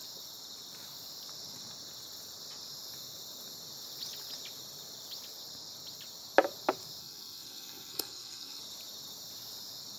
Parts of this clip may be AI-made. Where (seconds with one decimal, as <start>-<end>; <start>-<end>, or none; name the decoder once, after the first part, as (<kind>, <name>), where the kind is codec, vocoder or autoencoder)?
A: 7.0-8.6 (codec, SNAC)

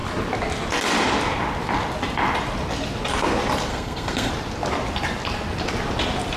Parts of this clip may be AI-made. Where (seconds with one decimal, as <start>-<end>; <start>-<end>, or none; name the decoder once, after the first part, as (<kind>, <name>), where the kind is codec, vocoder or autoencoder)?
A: 3.7-4.3 (codec, SNAC)